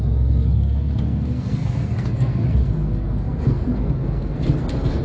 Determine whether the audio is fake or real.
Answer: fake